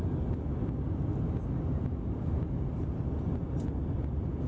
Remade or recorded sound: recorded